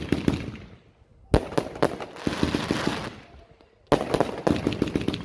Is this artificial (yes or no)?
no